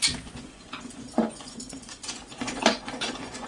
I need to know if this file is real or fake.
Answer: fake